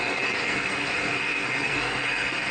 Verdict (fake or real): fake